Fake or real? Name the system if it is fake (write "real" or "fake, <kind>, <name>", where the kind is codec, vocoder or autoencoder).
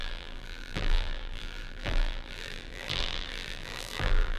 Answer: fake, vocoder, BigVGAN v2